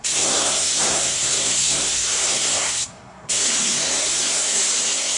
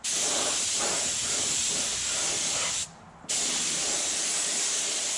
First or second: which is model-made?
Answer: first